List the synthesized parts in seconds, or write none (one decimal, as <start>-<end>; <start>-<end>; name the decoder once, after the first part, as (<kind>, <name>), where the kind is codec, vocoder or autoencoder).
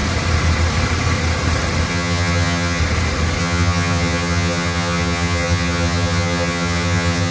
1.9-2.8 (vocoder, HiFi-GAN); 3.4-7.3